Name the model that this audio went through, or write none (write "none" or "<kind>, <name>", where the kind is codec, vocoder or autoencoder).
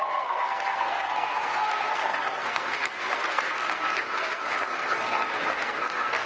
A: codec, SNAC